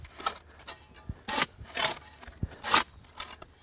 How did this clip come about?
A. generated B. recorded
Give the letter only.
B